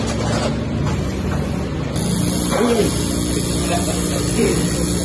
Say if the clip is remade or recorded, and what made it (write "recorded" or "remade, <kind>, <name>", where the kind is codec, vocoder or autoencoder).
recorded